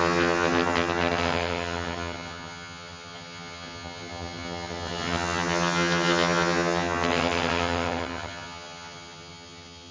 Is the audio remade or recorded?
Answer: remade